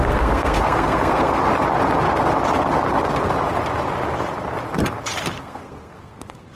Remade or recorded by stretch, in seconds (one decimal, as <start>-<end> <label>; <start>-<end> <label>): 0.0-1.4 remade; 1.4-5.4 recorded; 5.4-6.6 remade